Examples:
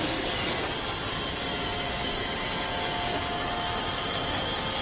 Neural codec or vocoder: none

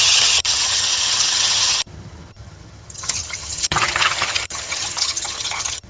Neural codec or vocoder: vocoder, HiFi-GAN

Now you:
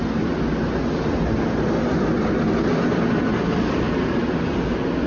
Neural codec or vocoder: none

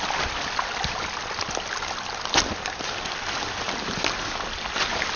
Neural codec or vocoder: none